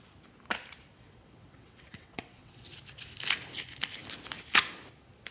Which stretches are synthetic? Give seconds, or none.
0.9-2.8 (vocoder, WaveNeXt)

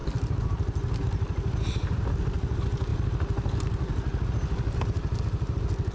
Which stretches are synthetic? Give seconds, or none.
none

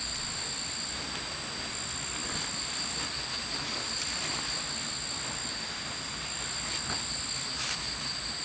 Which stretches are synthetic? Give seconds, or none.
none

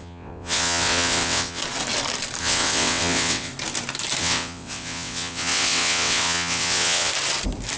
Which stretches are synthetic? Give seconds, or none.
0.0-1.6 (vocoder, WaveNeXt); 2.4-3.5; 4.2-7.1

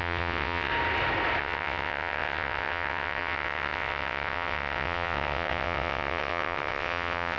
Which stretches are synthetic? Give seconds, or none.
0.0-0.7 (vocoder, WaveNeXt); 1.4-7.4

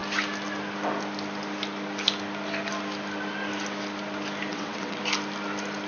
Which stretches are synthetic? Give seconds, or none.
4.5-5.0 (vocoder, WaveNeXt)